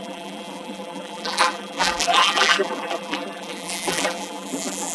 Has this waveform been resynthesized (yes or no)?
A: yes